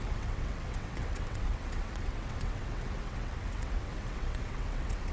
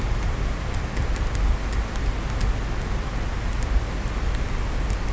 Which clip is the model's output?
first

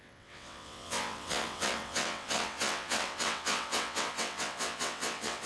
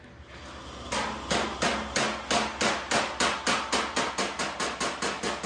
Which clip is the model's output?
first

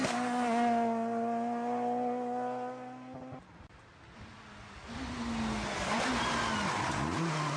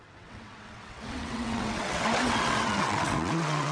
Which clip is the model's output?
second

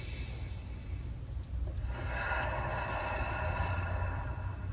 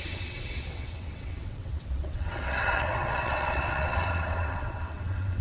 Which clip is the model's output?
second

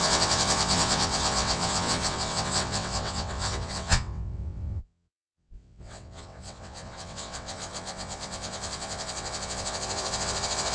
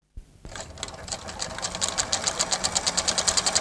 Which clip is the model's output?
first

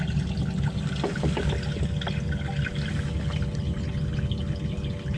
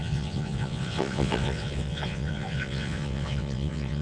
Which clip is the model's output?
second